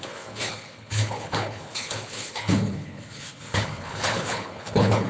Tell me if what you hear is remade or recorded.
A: remade